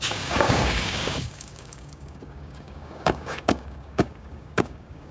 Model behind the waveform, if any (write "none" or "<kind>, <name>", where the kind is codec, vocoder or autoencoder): codec, DAC